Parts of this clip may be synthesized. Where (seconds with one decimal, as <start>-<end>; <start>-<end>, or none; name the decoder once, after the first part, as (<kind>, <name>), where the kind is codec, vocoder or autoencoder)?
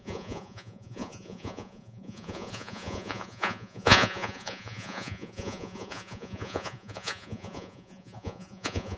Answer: 0.0-9.0 (vocoder, Vocos)